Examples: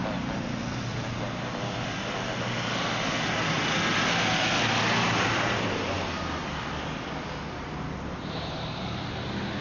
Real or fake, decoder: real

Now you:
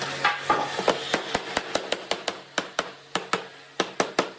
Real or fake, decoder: real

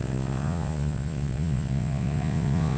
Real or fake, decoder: fake, vocoder, Vocos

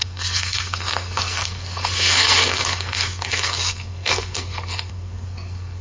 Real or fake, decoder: fake, codec, SNAC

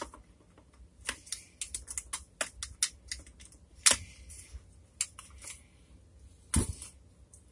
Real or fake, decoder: real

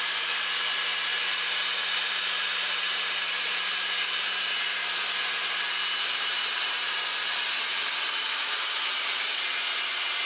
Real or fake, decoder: fake, vocoder, BigVGAN v2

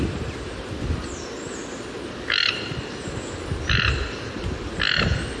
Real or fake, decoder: real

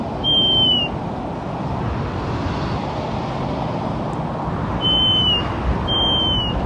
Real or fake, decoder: real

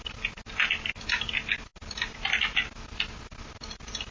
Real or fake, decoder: real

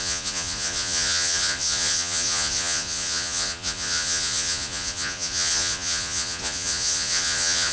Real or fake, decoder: fake, vocoder, Vocos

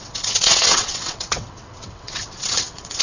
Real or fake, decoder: fake, vocoder, WaveNeXt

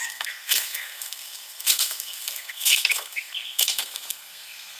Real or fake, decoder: fake, codec, SNAC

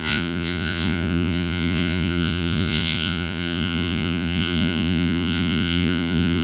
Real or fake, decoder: fake, vocoder, Vocos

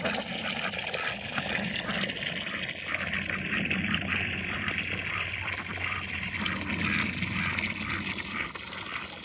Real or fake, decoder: real